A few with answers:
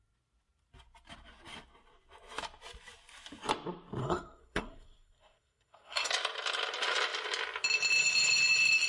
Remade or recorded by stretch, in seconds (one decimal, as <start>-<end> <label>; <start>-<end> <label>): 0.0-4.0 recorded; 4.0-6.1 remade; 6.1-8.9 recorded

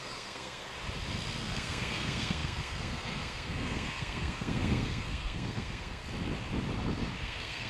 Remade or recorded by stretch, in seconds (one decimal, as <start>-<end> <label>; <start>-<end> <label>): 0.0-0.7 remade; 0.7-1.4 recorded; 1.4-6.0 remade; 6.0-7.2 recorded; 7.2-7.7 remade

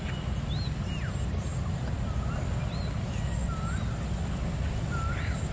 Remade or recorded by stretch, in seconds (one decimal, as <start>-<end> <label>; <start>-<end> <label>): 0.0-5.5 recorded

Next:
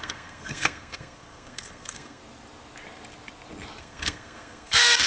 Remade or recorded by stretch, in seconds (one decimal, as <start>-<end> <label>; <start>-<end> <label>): 0.0-2.2 remade; 2.2-3.8 recorded; 3.8-5.1 remade

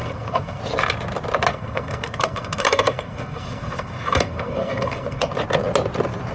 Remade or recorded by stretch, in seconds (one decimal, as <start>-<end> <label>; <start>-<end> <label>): 0.0-0.6 remade; 0.6-1.5 recorded; 1.5-5.3 remade; 5.3-6.3 recorded